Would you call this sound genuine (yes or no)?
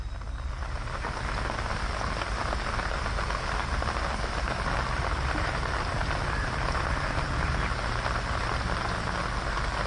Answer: yes